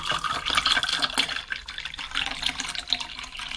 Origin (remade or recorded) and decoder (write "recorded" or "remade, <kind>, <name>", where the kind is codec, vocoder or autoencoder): recorded